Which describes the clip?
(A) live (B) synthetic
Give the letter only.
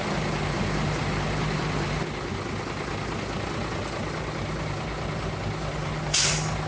A